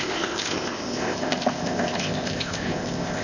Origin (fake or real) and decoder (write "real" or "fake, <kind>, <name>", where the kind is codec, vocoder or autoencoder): fake, codec, ZipCodec